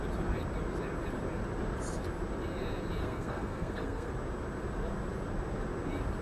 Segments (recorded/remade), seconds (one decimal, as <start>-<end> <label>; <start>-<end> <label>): 0.0-3.0 recorded; 3.0-4.1 remade; 4.1-6.2 recorded